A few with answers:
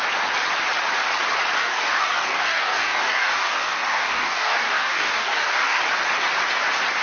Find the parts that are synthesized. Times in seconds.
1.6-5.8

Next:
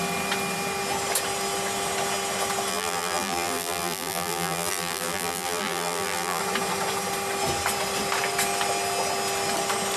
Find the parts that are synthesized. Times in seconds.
2.7-6.4

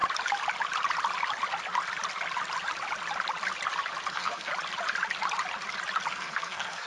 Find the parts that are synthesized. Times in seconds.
4.1-4.5; 6.1-6.9

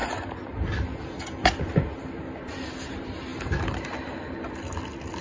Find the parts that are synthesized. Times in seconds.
none

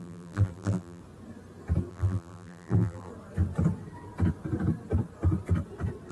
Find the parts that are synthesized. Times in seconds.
0.0-1.0; 1.9-3.1

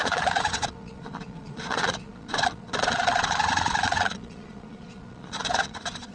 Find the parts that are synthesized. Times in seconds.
0.0-6.1